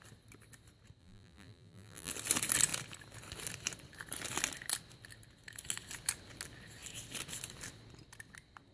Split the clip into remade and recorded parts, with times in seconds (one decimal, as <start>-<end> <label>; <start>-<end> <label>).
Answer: 0.0-1.0 recorded; 1.0-2.1 remade; 2.1-8.7 recorded